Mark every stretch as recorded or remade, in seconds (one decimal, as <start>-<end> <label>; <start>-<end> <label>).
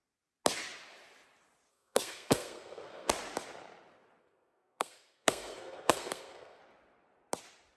0.0-1.7 recorded; 1.7-3.1 remade; 3.1-4.2 recorded; 4.2-6.6 remade; 6.6-7.8 recorded